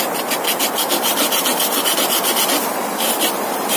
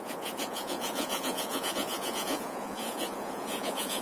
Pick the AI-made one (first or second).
second